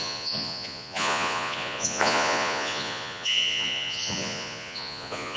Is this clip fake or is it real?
fake